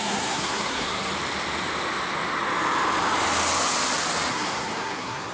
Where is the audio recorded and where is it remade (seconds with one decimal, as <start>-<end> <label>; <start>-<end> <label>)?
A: 0.0-1.1 remade; 1.1-4.3 recorded; 4.3-5.3 remade